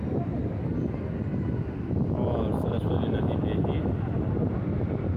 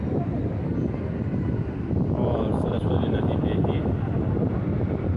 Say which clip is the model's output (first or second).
second